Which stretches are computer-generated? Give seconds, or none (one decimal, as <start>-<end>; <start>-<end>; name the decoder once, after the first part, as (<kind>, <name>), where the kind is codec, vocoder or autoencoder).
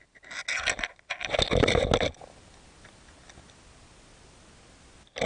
none